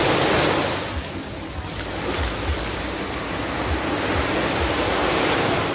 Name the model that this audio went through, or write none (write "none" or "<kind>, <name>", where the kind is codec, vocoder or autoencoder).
none